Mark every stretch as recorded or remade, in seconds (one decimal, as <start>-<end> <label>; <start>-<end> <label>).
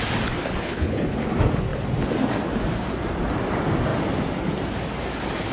0.0-0.6 recorded; 0.6-1.2 remade; 1.2-5.5 recorded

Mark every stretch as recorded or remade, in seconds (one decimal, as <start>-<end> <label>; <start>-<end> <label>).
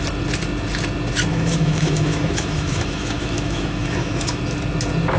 0.0-1.3 recorded; 1.3-4.4 remade; 4.4-5.2 recorded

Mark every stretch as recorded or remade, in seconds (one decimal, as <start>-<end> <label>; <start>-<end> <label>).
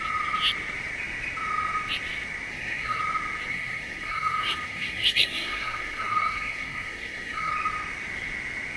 0.0-2.5 recorded; 2.5-3.0 remade; 3.0-3.5 recorded; 3.5-7.5 remade; 7.5-8.8 recorded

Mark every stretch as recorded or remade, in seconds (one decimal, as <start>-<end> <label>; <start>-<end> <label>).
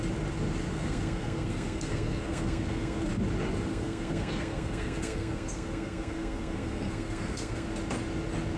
0.0-0.7 recorded; 0.7-3.1 remade; 3.1-3.7 recorded; 3.7-7.7 remade; 7.7-8.6 recorded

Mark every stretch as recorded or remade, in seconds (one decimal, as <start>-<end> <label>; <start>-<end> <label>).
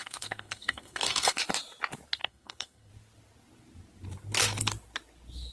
0.0-1.4 remade; 1.4-2.2 recorded; 2.2-2.9 remade; 2.9-5.5 recorded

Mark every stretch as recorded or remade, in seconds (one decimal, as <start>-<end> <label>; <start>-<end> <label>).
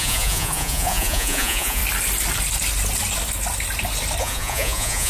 0.0-1.8 remade; 1.8-4.2 recorded; 4.2-5.1 remade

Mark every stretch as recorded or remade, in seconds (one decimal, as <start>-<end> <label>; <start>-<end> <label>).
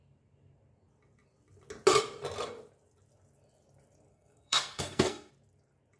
0.0-4.1 recorded; 4.1-5.3 remade; 5.3-6.0 recorded